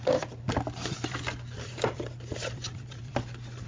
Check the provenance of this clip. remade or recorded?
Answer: remade